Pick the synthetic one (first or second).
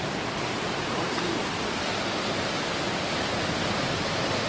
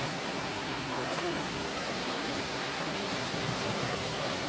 second